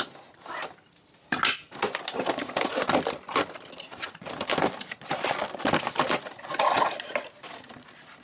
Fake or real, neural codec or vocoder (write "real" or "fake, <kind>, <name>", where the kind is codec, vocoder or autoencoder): real